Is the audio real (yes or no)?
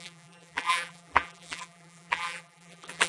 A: no